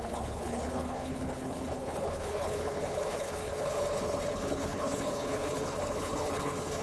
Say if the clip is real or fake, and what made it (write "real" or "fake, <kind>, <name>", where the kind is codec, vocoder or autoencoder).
fake, codec, HILCodec